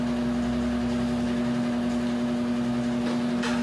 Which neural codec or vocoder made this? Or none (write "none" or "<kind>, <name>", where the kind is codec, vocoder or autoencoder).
none